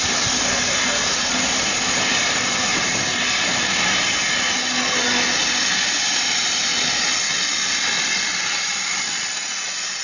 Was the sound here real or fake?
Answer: real